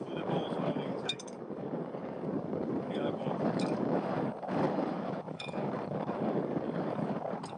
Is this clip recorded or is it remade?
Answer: remade